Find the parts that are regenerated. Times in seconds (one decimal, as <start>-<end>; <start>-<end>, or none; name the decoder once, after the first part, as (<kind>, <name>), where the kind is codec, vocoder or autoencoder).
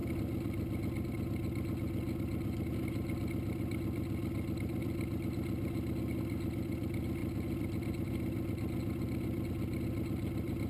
none